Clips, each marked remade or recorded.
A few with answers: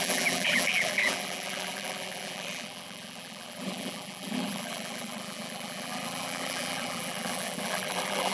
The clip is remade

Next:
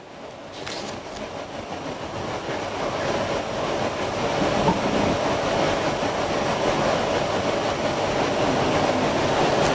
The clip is recorded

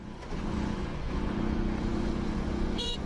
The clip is remade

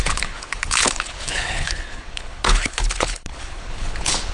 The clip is remade